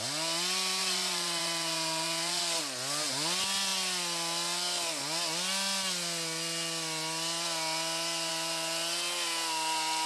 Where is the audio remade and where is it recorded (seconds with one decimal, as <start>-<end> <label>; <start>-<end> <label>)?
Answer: 0.0-0.8 recorded; 0.8-2.6 remade; 2.6-10.1 recorded